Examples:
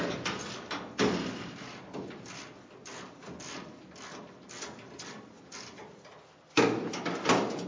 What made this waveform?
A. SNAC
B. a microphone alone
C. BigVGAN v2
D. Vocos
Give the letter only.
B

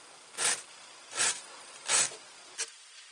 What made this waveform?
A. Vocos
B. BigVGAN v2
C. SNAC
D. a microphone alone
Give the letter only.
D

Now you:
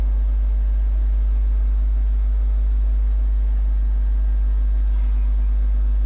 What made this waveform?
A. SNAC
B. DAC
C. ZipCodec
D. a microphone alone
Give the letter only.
D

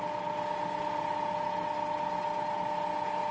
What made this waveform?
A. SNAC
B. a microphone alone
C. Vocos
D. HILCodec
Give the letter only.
B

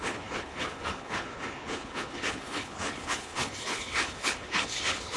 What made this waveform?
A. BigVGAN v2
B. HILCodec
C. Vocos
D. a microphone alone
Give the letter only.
B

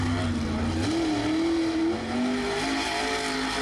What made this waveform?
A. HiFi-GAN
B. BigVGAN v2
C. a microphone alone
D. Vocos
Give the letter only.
C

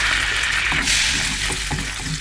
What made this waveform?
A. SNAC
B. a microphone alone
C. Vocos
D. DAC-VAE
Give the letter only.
B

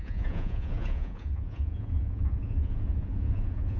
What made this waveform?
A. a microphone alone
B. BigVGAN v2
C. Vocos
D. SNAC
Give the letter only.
C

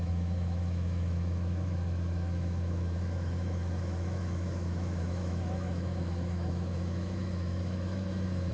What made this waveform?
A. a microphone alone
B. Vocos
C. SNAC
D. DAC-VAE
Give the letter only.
D